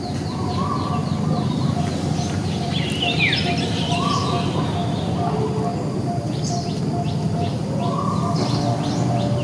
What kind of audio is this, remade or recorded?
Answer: recorded